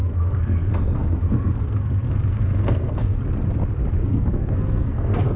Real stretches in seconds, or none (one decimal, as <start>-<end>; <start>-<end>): 3.2-4.0

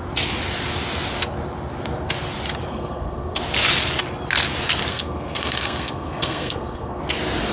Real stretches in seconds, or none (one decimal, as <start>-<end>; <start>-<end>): 0.0-2.7; 3.4-4.9; 7.0-7.5

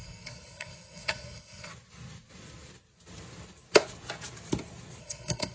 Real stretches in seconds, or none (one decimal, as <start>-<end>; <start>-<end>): 1.7-5.0

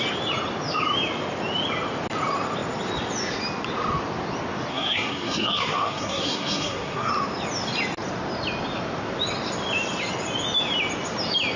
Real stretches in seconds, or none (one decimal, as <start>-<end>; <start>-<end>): 0.0-4.7; 7.1-11.6

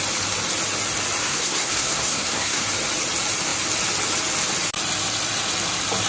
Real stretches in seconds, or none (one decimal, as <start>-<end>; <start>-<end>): 0.0-1.2; 2.6-6.1

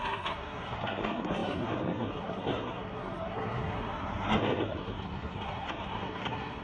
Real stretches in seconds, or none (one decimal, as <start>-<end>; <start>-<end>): none